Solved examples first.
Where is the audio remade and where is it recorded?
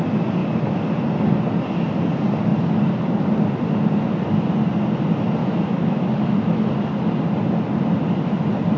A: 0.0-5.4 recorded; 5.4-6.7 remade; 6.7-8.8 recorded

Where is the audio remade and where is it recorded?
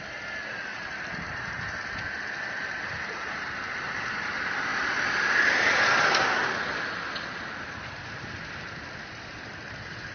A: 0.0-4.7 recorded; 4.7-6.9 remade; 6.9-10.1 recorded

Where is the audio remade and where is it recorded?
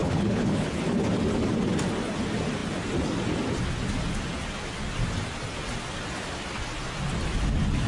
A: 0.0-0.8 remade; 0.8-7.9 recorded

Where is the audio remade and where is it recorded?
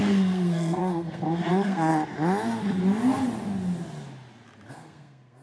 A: 0.0-1.9 remade; 1.9-4.7 recorded; 4.7-5.4 remade